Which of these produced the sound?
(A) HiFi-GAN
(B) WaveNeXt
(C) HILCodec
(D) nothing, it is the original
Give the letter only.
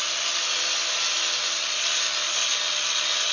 D